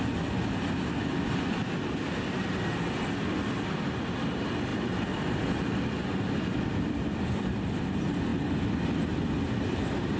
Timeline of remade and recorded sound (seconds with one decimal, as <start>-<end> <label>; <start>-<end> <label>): 0.0-4.7 recorded; 4.7-7.8 remade; 7.8-8.3 recorded; 8.3-10.2 remade